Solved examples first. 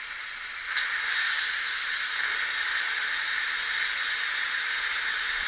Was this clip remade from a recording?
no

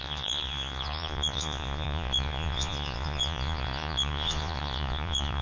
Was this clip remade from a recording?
yes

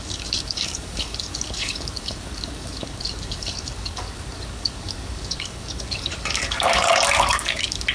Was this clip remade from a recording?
yes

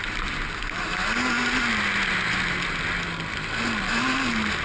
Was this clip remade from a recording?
no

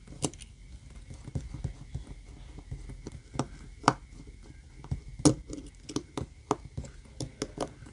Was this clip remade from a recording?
no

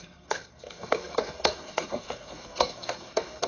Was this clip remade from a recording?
yes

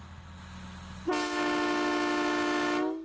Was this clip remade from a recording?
no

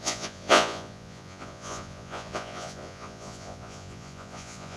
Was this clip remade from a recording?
yes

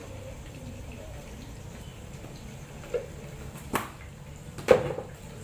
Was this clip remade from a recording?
yes